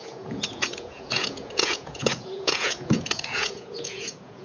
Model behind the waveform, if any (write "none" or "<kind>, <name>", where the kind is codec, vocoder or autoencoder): vocoder, Vocos